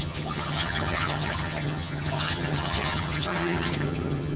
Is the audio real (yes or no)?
no